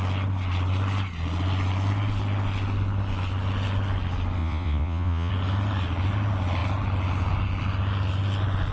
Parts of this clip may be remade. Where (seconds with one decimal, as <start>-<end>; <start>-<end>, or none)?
4.4-5.3

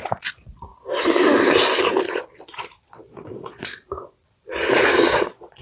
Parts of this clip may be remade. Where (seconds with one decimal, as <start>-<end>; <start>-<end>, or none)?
0.0-0.7; 2.0-5.6

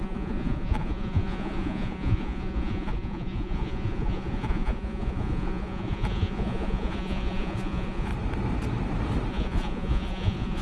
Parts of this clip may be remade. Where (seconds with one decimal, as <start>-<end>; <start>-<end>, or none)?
0.0-8.1; 9.3-10.6